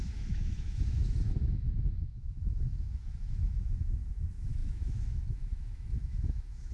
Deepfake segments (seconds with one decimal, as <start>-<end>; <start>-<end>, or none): 0.0-6.7